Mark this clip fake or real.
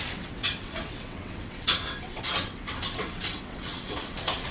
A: fake